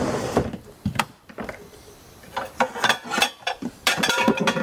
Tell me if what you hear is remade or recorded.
remade